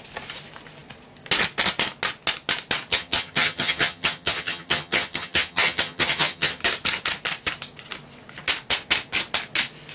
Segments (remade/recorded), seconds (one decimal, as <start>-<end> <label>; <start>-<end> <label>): 0.0-2.9 recorded; 2.9-6.6 remade; 6.6-9.9 recorded

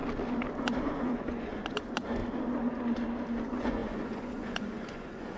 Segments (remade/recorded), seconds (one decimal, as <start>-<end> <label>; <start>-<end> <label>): 0.0-0.8 recorded; 0.8-2.2 remade; 2.2-3.4 recorded; 3.4-5.4 remade